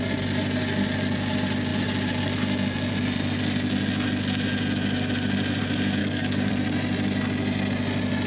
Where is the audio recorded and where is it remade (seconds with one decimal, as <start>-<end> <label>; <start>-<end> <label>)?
0.0-6.0 recorded; 6.0-6.5 remade; 6.5-8.3 recorded